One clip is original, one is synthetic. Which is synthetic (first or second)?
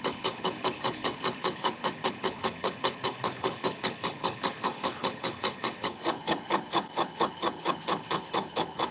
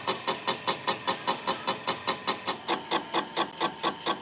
first